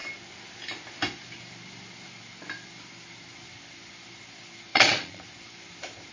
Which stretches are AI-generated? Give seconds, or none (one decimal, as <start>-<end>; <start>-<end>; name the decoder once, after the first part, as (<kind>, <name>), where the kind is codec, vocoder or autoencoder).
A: 4.7-5.2 (vocoder, Vocos)